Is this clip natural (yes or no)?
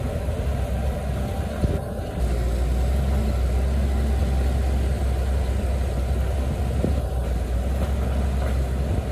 yes